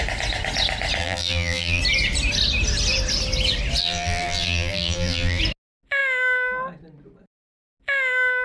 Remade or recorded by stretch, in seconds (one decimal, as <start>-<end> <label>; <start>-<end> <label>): 0.0-1.0 recorded; 1.0-1.8 remade; 1.8-3.8 recorded; 3.8-5.4 remade; 5.4-8.4 recorded